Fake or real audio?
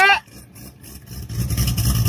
real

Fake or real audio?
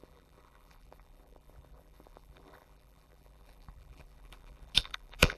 fake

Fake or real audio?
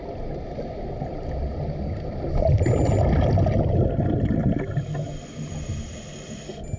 real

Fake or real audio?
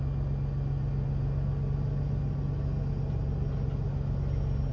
real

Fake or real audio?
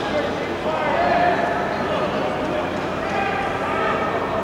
real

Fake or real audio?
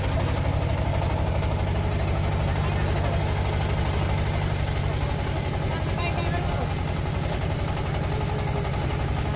real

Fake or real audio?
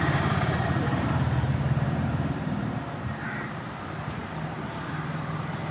fake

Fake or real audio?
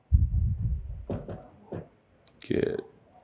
real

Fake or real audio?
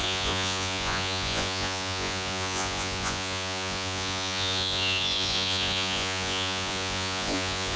fake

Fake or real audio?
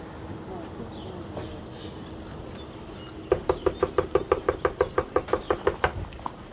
real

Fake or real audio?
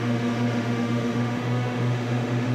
fake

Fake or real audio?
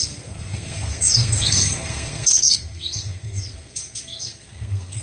fake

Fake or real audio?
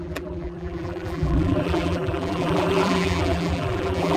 fake